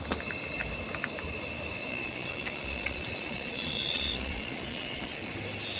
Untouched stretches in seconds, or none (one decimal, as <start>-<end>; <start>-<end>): 0.0-1.8; 5.3-5.8

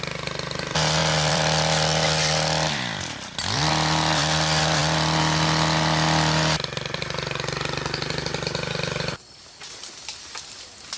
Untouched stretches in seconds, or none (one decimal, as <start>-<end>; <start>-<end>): 0.0-1.0; 3.7-11.0

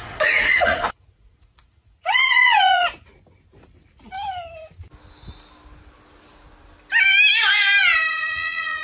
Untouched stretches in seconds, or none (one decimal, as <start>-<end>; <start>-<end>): 3.1-8.1

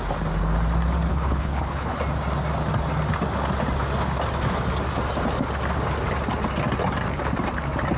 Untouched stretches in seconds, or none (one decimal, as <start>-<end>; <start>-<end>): 0.0-1.1; 2.0-8.0

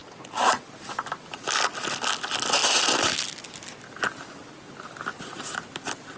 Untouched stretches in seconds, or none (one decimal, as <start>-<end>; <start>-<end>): 0.0-6.2